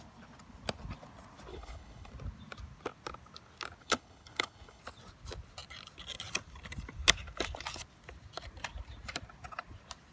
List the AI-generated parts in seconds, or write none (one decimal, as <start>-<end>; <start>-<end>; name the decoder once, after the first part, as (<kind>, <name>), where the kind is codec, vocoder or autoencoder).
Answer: 1.5-2.1 (codec, HILCodec); 3.8-4.8